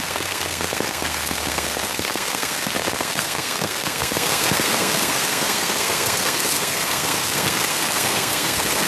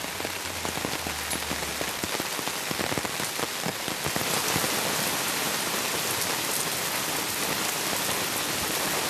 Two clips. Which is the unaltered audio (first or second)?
second